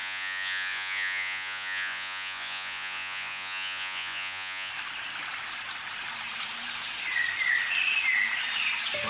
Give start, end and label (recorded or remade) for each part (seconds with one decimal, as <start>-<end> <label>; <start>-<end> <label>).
0.0-4.7 remade; 4.7-9.1 recorded